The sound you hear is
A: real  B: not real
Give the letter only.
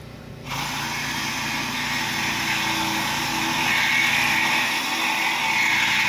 A